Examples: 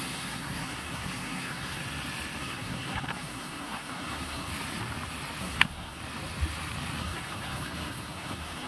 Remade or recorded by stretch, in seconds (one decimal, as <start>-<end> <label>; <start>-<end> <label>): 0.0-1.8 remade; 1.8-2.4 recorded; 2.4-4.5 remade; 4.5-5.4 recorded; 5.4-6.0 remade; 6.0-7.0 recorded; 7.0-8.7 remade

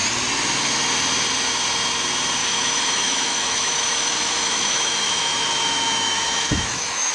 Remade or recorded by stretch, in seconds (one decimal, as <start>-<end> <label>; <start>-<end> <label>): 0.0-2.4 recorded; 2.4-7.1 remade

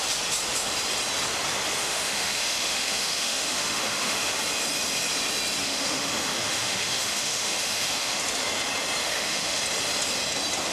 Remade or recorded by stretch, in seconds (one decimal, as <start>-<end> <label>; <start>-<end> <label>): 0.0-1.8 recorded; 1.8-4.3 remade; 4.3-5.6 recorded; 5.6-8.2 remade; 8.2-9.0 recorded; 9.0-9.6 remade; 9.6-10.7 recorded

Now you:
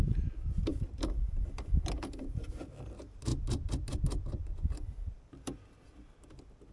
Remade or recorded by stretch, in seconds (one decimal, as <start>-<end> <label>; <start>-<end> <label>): 0.0-6.7 recorded

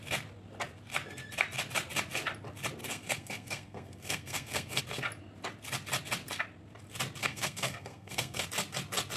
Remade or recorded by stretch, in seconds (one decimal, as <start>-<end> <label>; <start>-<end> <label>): 0.0-2.8 recorded; 2.8-4.8 remade; 4.8-7.2 recorded; 7.2-8.4 remade; 8.4-9.2 recorded

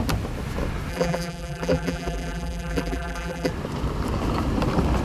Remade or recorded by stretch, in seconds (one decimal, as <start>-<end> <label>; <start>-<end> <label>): 0.0-0.9 recorded; 0.9-3.5 remade; 3.5-5.0 recorded

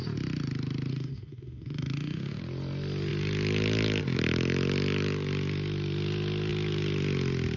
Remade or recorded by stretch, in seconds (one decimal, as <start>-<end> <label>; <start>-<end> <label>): 0.0-0.9 recorded; 0.9-2.4 remade; 2.4-7.6 recorded

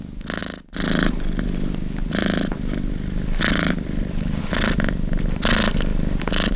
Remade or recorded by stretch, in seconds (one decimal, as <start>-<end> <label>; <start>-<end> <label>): 0.0-6.6 recorded